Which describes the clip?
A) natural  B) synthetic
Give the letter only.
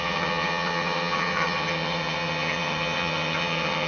B